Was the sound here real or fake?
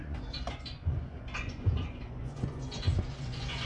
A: fake